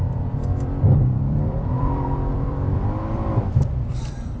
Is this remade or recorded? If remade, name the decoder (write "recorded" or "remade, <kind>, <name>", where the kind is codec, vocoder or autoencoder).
remade, vocoder, BigVGAN v2